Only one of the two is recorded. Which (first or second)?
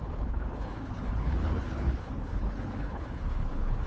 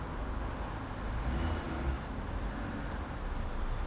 second